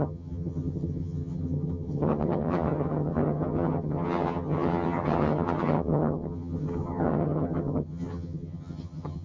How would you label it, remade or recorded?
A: remade